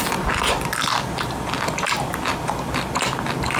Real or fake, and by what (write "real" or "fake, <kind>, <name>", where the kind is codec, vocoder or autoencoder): real